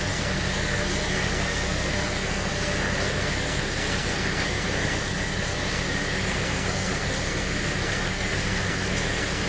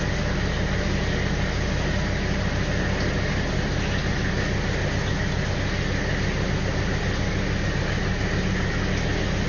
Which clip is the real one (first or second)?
second